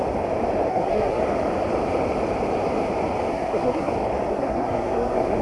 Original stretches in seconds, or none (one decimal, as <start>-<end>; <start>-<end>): 0.0-0.7; 1.2-3.3; 3.9-4.3